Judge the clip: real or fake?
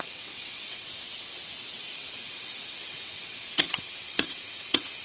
fake